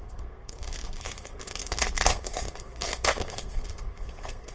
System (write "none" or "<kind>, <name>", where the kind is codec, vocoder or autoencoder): codec, SNAC